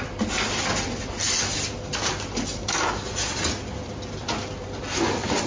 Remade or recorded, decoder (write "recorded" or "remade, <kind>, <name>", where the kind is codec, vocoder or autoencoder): recorded